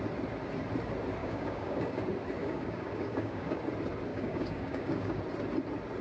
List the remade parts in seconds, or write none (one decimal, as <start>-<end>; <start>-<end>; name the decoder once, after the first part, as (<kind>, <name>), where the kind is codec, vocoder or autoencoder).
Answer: 1.2-2.0 (codec, DAC); 2.4-3.6; 4.1-5.2